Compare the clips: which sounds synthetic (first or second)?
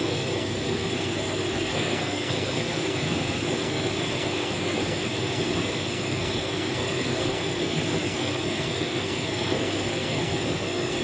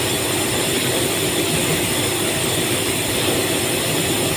first